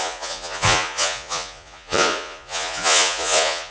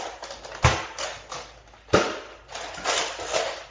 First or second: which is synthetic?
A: first